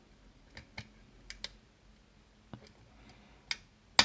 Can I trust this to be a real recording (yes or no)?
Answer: yes